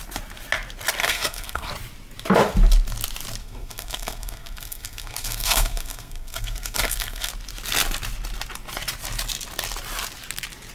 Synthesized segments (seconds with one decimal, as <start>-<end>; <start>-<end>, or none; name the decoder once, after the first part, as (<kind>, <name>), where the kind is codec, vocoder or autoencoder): 1.0-1.7 (codec, SNAC); 3.4-7.3